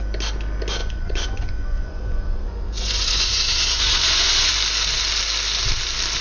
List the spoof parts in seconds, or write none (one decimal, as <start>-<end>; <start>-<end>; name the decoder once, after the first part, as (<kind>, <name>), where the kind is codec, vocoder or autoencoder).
0.8-4.5 (vocoder, Vocos)